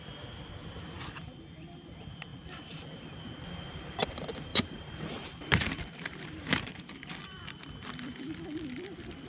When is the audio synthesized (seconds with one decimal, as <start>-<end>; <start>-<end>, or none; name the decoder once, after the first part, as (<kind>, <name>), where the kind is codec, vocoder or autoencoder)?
2.3-3.2 (vocoder, BigVGAN v2); 4.5-6.9